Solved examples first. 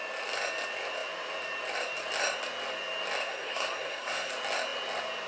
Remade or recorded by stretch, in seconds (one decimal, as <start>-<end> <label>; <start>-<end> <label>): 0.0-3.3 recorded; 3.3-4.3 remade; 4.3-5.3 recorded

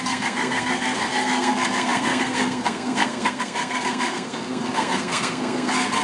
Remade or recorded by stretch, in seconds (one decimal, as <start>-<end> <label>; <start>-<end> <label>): 0.0-6.0 remade

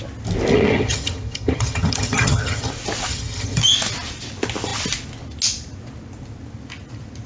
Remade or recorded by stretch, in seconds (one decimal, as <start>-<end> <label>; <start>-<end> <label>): 0.0-0.5 recorded; 0.5-2.7 remade; 2.7-3.1 recorded; 3.1-3.6 remade; 3.6-7.3 recorded

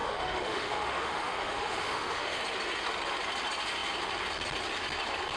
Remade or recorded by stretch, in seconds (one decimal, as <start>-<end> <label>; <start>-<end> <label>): 0.0-2.4 remade; 2.4-5.4 recorded

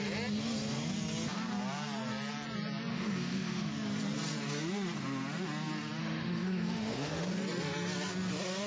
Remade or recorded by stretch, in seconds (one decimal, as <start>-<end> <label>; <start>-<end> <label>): 0.0-2.9 recorded; 2.9-3.7 remade; 3.7-6.0 recorded; 6.0-7.4 remade; 7.4-8.7 recorded

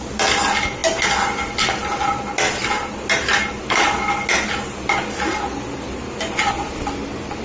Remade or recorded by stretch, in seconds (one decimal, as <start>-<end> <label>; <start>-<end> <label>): 0.0-7.4 recorded

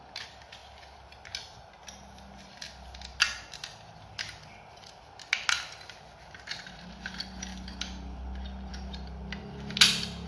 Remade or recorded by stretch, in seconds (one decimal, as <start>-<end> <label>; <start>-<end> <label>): 0.0-10.3 recorded